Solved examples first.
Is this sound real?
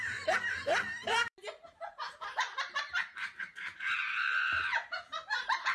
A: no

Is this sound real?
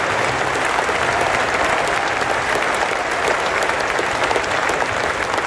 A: yes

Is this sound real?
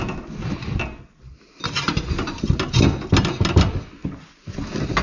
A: yes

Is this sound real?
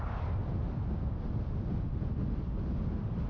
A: yes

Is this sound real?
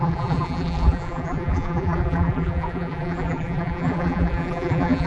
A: no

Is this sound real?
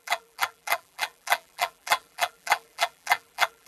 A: no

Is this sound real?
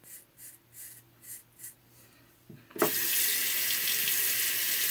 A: yes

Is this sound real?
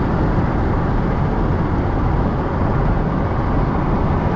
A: yes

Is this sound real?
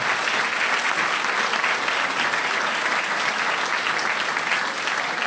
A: yes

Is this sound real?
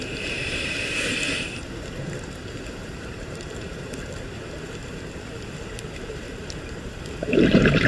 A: no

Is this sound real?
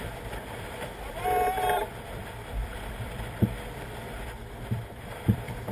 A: no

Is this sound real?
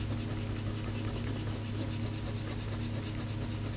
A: yes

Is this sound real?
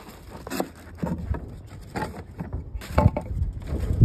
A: yes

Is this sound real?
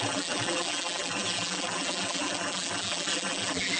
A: no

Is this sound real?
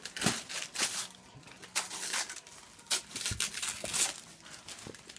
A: yes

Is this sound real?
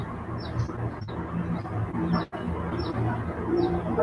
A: yes